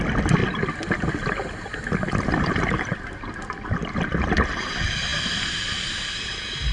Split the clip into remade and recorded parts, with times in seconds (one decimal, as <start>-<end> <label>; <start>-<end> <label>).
0.0-6.7 recorded